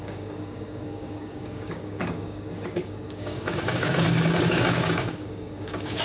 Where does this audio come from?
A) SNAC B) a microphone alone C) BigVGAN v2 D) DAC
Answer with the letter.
D